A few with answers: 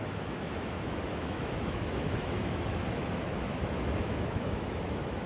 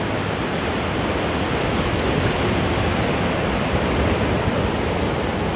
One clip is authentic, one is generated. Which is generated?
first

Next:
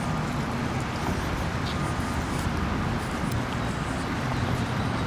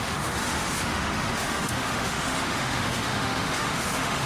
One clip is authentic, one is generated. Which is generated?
second